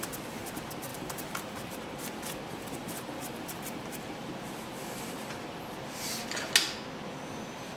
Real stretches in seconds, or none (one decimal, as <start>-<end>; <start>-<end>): 0.0-0.9; 1.8-2.8; 4.3-7.8